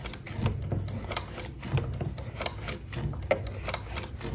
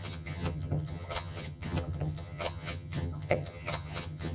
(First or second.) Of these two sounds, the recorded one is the first